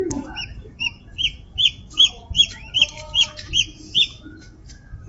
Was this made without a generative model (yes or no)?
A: no